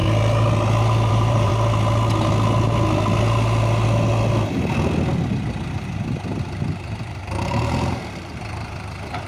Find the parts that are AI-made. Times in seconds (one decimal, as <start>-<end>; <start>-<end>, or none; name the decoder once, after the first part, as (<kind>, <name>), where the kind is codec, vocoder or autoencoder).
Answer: 1.1-1.5 (vocoder, BigVGAN v2); 6.4-9.3